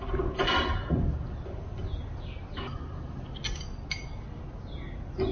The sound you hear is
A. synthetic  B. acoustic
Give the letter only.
B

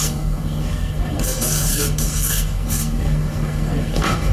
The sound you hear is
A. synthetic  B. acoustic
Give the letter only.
A